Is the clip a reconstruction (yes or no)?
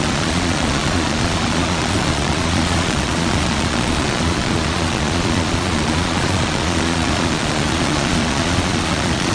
yes